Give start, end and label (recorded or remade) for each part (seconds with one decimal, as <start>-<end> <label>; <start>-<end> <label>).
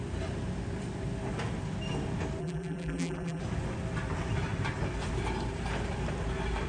0.0-2.4 recorded; 2.4-3.4 remade; 3.4-6.7 recorded